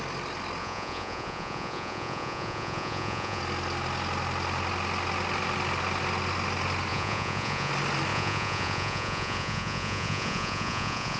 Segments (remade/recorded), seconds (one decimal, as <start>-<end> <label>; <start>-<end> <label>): 0.0-0.6 recorded; 0.6-3.4 remade; 3.4-6.9 recorded; 6.9-7.7 remade; 7.7-8.1 recorded; 8.1-11.2 remade